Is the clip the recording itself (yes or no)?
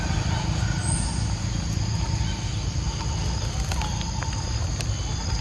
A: yes